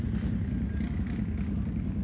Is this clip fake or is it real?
real